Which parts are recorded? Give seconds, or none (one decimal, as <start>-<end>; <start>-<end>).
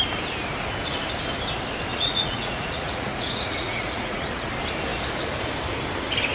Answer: 0.0-1.9; 4.5-6.3